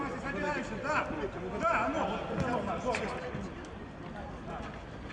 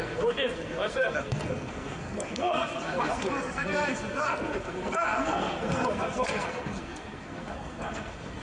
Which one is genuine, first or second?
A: first